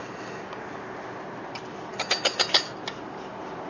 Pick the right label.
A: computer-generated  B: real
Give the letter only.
B